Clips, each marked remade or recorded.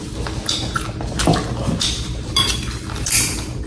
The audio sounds recorded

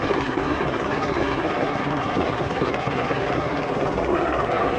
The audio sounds remade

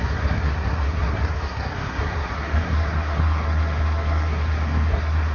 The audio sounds remade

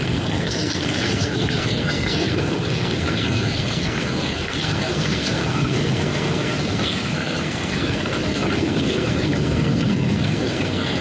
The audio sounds remade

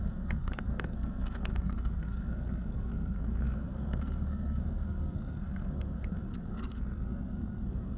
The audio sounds remade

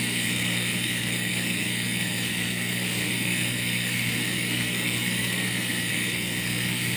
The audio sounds remade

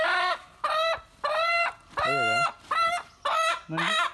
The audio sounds recorded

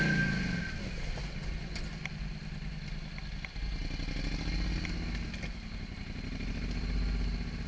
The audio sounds recorded